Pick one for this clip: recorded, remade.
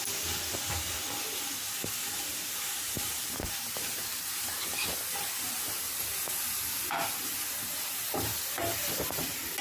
recorded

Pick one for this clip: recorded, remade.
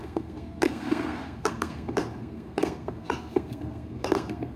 remade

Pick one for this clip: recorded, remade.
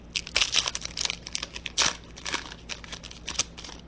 recorded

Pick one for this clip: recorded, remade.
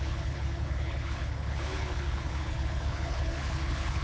remade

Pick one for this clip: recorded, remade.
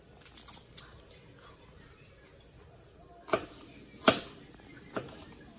recorded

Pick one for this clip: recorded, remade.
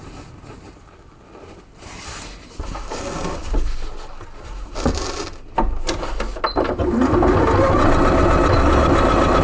recorded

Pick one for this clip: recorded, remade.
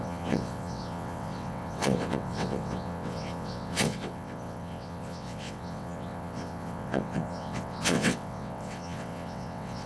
remade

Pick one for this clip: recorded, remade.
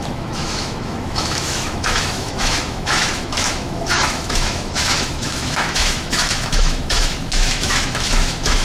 remade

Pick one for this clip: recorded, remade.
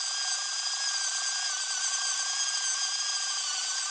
recorded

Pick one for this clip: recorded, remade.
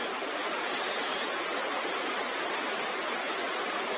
recorded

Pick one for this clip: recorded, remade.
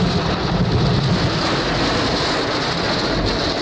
recorded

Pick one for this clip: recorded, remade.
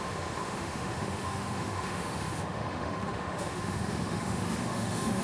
remade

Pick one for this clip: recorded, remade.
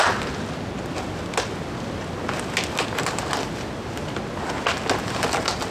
recorded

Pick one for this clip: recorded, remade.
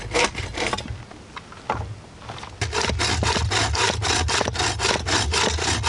recorded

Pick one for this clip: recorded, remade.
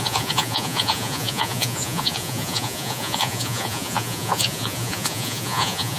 remade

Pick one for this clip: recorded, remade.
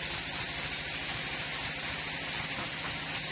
recorded